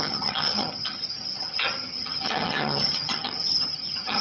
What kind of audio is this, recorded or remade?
remade